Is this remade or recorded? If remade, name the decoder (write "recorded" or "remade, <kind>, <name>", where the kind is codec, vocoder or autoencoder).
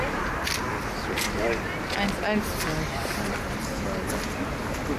recorded